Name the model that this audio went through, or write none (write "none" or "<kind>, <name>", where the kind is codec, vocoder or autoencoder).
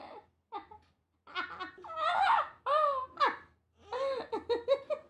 none